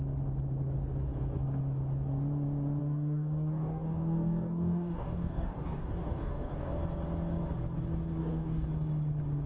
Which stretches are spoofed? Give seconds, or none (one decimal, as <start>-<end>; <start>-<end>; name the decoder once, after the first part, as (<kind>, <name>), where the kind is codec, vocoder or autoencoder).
2.8-6.8 (codec, DAC); 8.2-8.7